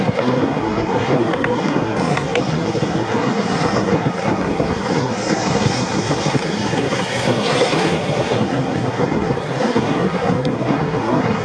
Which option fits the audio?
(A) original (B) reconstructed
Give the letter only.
B